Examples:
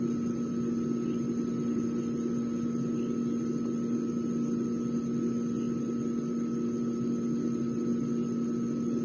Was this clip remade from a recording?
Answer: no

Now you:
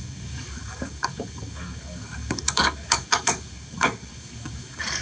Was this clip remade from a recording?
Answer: yes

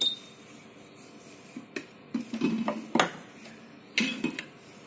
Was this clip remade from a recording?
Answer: no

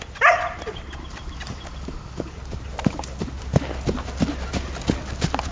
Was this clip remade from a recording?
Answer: no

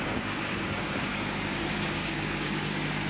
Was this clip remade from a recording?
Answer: yes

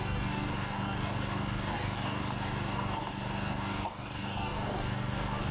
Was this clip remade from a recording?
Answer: yes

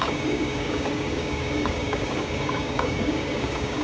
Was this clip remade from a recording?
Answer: yes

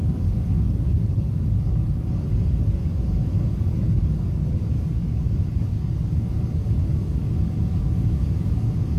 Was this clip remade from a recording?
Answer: yes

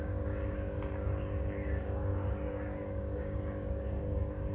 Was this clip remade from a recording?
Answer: yes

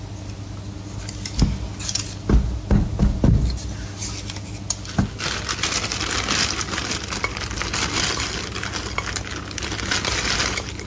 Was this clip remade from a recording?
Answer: no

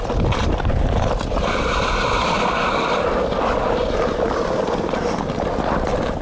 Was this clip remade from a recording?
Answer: no